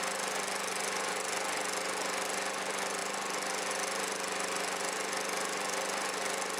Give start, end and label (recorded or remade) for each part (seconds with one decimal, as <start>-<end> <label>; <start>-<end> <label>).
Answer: 0.0-6.6 recorded